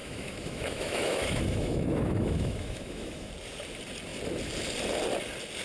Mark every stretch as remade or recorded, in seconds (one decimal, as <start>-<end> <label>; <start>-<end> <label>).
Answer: 0.0-3.3 remade; 3.3-5.6 recorded